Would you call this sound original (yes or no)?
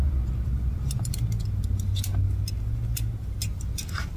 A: yes